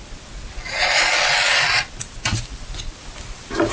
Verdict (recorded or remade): recorded